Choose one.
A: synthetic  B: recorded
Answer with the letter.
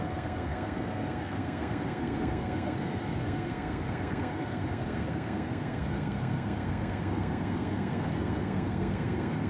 A